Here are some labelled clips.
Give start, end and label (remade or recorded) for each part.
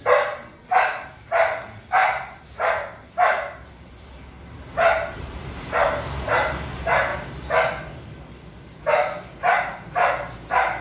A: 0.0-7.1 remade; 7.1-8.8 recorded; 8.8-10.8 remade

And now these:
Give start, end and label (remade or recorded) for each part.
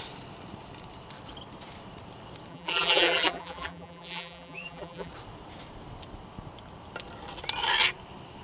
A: 0.0-2.5 recorded; 2.5-5.1 remade; 5.1-8.4 recorded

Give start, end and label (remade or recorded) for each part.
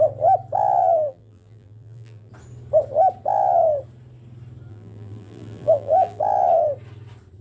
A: 0.0-0.8 recorded; 0.8-2.3 remade; 2.3-4.7 recorded; 4.7-6.2 remade; 6.2-7.4 recorded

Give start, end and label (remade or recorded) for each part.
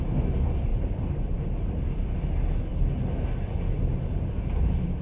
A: 0.0-5.0 recorded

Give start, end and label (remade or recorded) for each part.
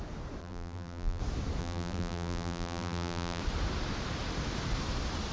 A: 0.0-0.4 recorded; 0.4-1.2 remade; 1.2-1.6 recorded; 1.6-3.4 remade; 3.4-5.3 recorded